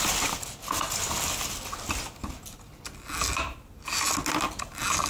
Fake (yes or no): no